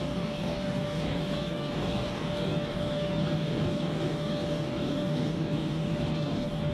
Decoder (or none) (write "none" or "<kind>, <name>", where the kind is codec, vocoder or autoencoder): codec, DAC